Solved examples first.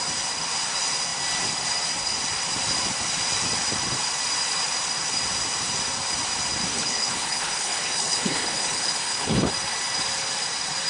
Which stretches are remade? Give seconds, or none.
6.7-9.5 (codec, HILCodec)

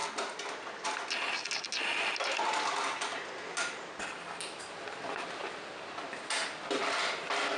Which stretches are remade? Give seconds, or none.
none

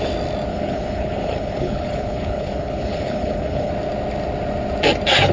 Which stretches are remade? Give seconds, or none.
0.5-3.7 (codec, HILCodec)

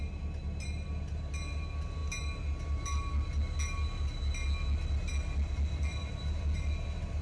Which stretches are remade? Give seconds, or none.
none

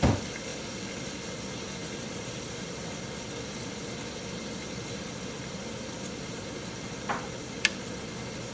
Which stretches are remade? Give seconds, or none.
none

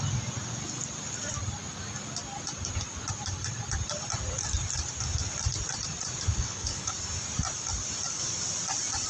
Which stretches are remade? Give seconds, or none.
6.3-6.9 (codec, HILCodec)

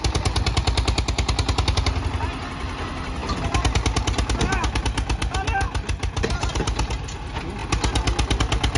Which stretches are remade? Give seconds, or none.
none

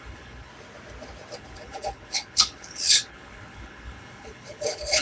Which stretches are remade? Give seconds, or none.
0.0-0.5 (codec, HILCodec); 1.4-5.0